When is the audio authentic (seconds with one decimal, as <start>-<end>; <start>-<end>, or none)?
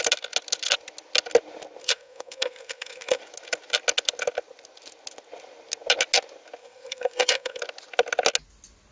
0.0-1.8; 3.2-6.6; 7.6-8.9